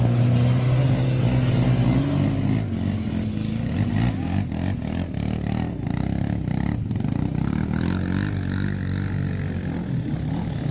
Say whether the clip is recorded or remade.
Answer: recorded